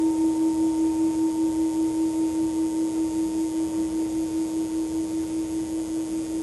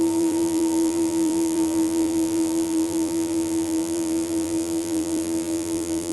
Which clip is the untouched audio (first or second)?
first